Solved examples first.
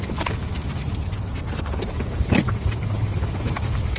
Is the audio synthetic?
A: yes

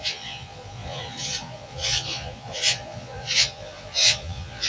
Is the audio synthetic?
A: yes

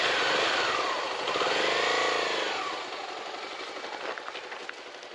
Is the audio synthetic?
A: no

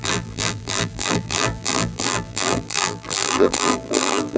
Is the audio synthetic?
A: yes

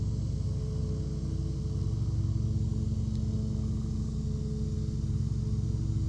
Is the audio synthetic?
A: no